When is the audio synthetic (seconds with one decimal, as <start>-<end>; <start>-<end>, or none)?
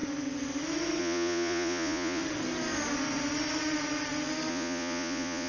1.0-2.2; 4.5-5.5